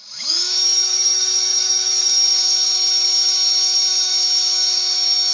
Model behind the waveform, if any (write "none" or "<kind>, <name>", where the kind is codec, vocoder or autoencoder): codec, DAC